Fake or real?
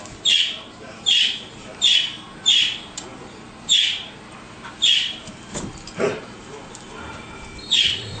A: fake